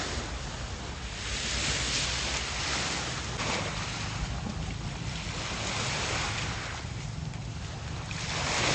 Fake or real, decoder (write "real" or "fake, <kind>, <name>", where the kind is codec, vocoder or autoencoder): real